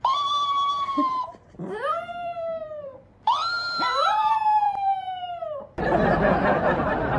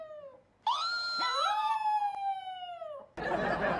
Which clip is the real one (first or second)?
second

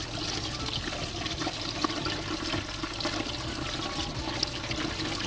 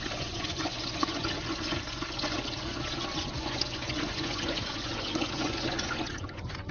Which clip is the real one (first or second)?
first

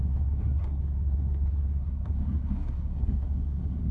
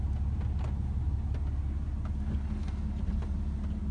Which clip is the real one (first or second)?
second